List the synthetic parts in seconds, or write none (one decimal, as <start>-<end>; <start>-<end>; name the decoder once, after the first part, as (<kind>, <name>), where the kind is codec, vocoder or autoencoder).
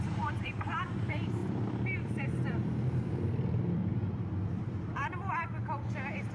0.0-3.8 (vocoder, BigVGAN v2); 4.5-6.3